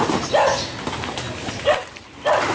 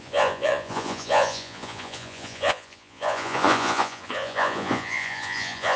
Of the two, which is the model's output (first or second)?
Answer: second